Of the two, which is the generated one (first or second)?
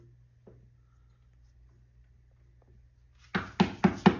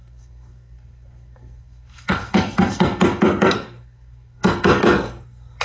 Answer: second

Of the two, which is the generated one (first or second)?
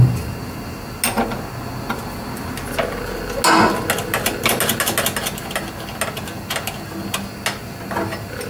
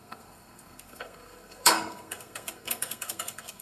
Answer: second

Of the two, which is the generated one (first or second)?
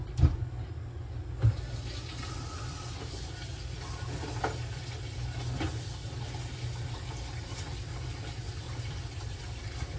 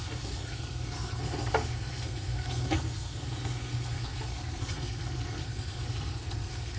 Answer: second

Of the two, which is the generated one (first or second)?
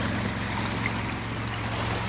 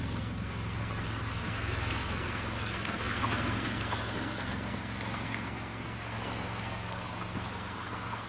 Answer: second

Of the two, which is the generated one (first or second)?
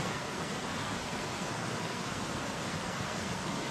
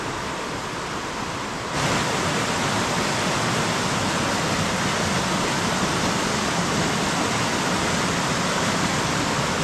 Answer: first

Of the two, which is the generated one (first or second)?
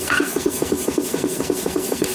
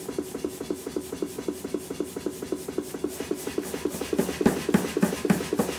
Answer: first